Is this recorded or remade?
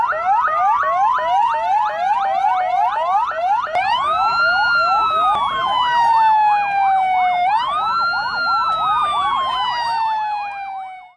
recorded